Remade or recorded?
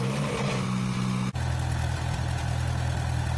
recorded